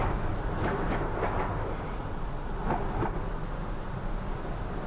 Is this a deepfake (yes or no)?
no